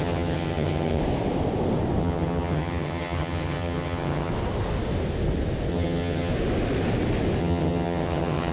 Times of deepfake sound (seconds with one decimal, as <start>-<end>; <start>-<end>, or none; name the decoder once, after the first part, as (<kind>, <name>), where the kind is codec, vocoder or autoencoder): 0.0-1.0 (vocoder, HiFi-GAN); 2.0-4.3; 5.7-6.3; 7.4-8.5